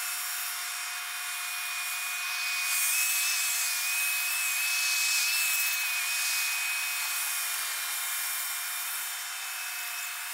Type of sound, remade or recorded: recorded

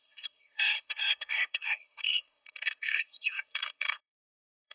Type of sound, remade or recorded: remade